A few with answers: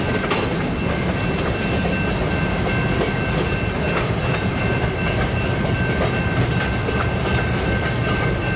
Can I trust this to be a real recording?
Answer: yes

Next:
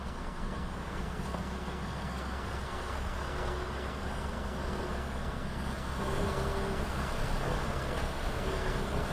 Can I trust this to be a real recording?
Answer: no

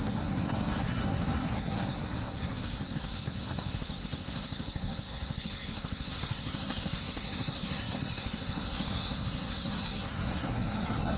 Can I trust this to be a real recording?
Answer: no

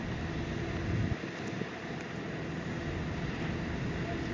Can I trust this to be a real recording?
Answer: yes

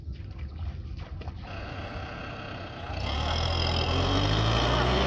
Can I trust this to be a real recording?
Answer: yes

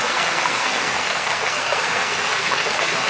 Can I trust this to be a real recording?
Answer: no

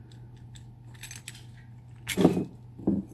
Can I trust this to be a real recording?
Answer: yes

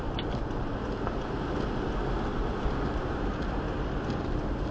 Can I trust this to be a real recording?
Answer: yes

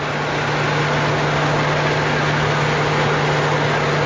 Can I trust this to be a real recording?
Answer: yes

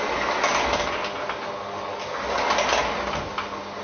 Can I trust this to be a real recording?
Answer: yes